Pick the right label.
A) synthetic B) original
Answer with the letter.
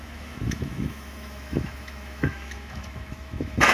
A